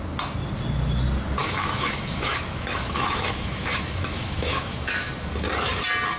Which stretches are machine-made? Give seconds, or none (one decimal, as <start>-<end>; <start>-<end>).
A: 1.4-5.1